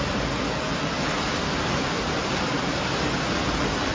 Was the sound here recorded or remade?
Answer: recorded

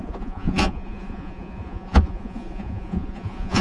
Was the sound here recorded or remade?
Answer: remade